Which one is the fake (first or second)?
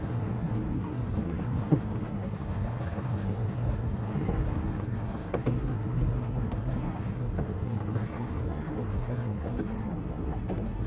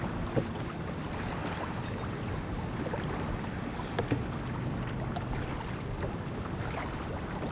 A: first